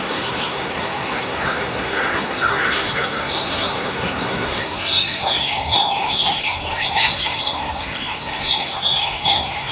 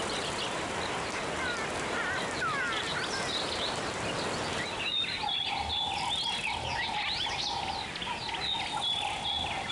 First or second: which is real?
second